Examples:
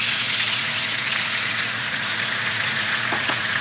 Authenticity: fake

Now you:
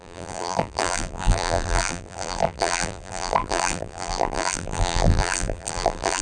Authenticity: fake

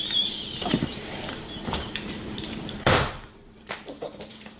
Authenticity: fake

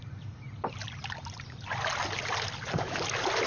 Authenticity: real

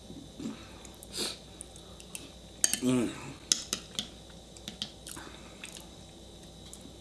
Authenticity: real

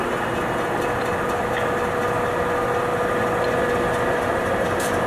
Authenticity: real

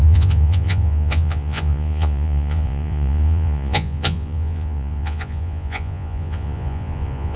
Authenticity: fake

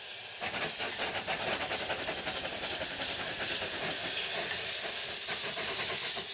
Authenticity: real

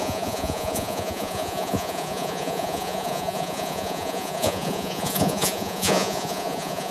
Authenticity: fake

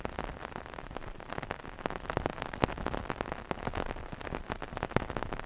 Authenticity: fake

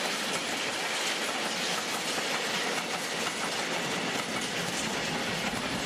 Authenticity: real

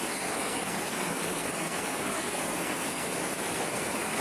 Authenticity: fake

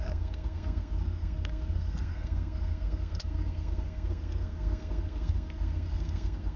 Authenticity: fake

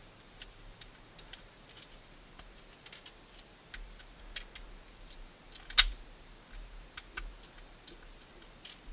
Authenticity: real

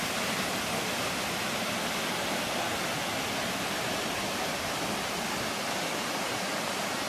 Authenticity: real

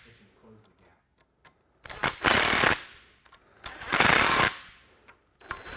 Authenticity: real